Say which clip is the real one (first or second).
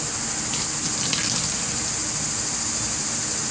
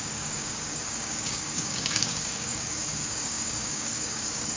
first